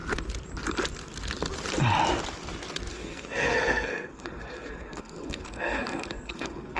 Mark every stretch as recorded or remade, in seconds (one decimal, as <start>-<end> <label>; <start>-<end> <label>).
0.0-2.9 recorded; 2.9-6.8 remade

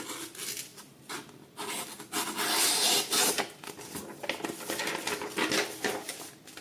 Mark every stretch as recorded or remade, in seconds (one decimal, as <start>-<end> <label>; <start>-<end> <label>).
0.0-6.6 recorded

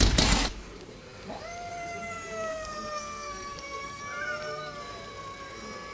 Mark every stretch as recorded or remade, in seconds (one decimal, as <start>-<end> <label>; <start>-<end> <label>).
0.0-2.5 recorded; 2.5-4.0 remade; 4.0-5.9 recorded

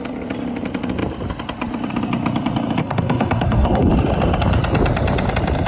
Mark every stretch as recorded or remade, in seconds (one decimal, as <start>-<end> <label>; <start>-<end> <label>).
0.0-2.8 recorded; 2.8-3.9 remade; 3.9-5.7 recorded

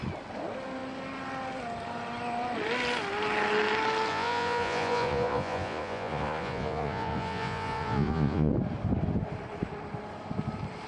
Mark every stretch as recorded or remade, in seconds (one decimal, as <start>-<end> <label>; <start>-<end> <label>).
0.0-4.1 recorded; 4.1-8.5 remade; 8.5-10.9 recorded

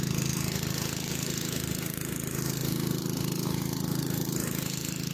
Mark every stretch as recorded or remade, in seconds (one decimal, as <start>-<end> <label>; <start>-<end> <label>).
0.0-5.1 remade

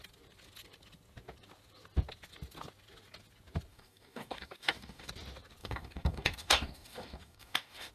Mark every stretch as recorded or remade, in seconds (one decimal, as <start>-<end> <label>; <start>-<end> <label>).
0.0-3.7 recorded; 3.7-5.1 remade; 5.1-5.6 recorded; 5.6-7.9 remade